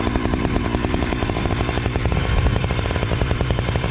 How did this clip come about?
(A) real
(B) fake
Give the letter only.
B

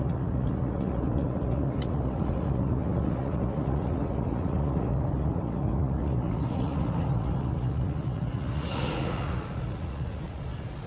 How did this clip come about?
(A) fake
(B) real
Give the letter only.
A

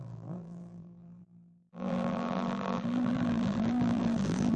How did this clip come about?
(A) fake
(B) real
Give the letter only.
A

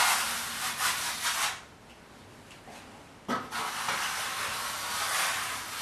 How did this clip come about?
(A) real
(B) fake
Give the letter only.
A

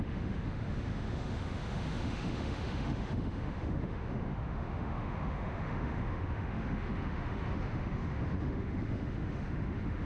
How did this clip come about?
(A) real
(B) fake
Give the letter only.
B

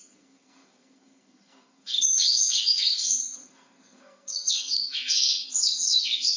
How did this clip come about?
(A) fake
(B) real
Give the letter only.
A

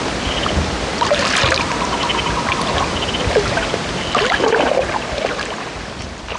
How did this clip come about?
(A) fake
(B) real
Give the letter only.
B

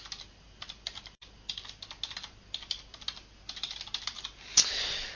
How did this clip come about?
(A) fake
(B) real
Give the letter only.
B